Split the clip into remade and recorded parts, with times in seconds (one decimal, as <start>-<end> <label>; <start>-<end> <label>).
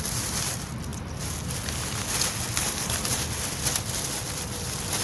0.0-5.0 recorded